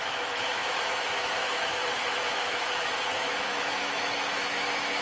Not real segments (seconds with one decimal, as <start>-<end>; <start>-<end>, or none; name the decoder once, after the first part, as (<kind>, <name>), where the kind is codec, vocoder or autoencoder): 0.0-5.0 (autoencoder, DAC-VAE)